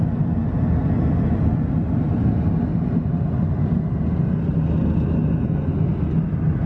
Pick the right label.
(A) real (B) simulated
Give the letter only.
A